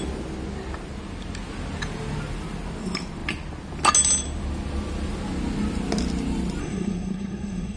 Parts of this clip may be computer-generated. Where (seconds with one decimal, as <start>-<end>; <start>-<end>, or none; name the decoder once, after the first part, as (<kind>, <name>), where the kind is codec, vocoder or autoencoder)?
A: 6.6-7.8 (codec, SNAC)